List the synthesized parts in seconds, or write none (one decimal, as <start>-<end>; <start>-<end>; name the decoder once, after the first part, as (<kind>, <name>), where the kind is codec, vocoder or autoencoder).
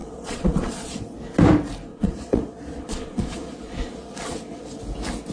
0.0-1.0 (vocoder, Vocos); 1.9-4.8